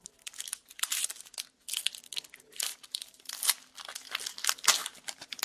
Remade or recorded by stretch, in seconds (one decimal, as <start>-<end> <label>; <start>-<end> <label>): 0.0-0.5 recorded; 0.5-1.3 remade; 1.3-2.7 recorded; 2.7-3.3 remade; 3.3-4.8 recorded; 4.8-5.4 remade